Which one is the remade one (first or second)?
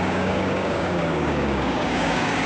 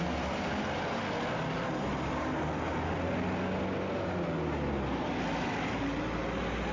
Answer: first